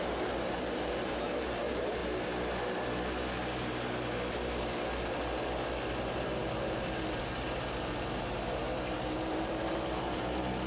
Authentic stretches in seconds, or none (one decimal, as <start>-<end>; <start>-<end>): 2.0-6.0